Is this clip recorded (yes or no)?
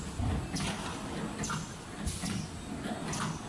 yes